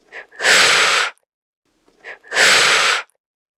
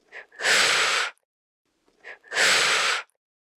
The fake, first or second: second